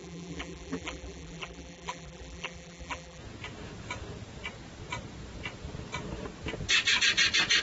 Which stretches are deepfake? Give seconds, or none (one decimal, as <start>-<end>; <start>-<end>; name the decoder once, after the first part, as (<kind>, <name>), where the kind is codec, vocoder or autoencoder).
0.0-3.2 (vocoder, BigVGAN v2)